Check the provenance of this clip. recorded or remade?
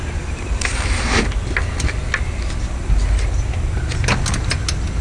recorded